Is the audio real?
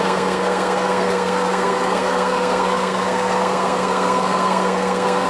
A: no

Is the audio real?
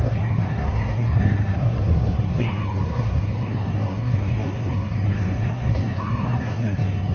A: no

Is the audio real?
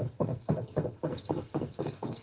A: no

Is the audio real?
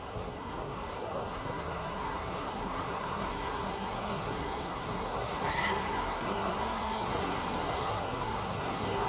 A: no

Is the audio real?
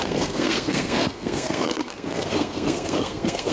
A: no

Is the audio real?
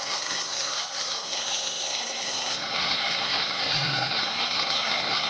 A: no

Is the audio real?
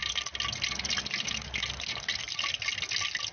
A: yes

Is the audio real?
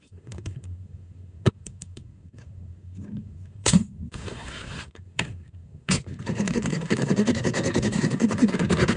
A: no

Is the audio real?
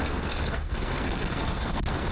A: no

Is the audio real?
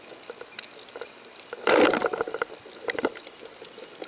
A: yes